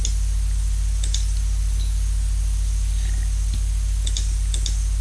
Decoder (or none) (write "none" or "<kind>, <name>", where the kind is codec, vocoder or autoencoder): none